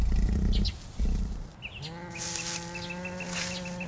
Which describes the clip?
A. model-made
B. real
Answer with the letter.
B